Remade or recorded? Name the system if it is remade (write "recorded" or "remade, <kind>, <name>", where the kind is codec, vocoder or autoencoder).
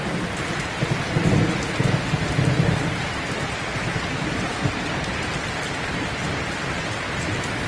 recorded